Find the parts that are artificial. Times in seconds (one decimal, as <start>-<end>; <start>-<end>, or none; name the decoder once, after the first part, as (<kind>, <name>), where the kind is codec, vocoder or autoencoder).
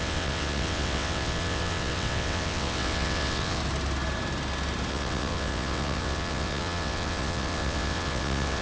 0.0-3.6 (vocoder, WaveNeXt); 4.9-8.6